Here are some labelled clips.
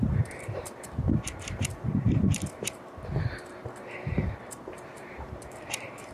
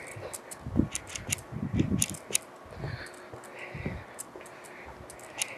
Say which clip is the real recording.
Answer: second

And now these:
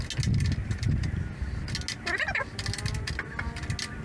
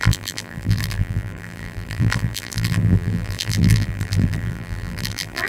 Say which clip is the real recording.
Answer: first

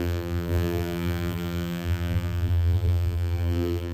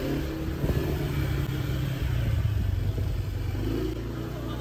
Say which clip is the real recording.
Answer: second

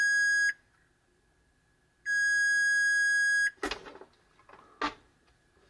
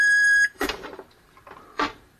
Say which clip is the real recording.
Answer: first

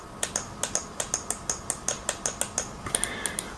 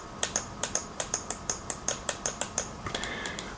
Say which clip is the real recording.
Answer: first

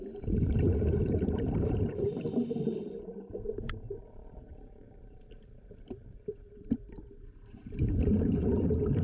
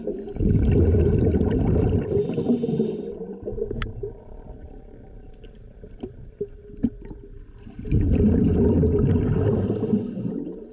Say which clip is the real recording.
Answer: second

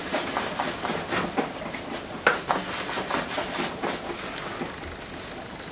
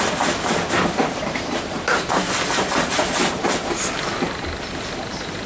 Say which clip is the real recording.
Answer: first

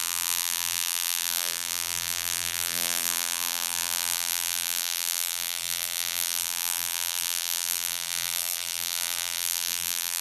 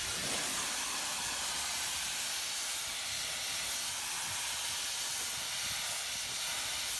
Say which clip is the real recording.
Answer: second